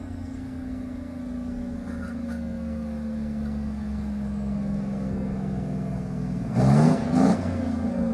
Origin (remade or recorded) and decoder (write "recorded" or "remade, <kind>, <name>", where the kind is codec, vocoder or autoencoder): remade, codec, SNAC